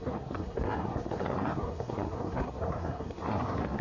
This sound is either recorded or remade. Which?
remade